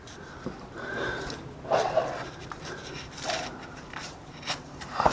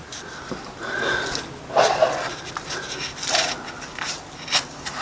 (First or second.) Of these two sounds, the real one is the second